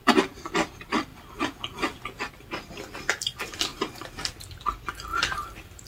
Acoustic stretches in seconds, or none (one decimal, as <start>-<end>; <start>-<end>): 0.0-3.7; 4.6-5.1